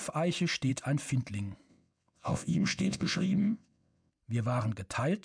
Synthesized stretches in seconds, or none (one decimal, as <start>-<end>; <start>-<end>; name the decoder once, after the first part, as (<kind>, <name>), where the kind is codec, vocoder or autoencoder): 1.7-4.1 (vocoder, WaveNeXt)